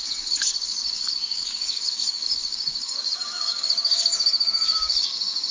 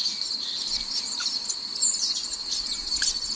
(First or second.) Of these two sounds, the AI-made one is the first